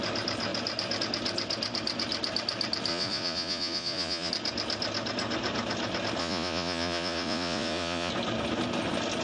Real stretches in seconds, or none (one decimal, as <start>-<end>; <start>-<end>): 0.0-2.9; 4.3-6.2; 8.1-9.2